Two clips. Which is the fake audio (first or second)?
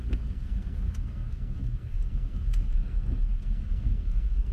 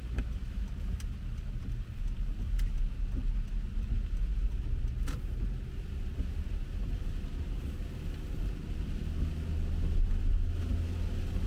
first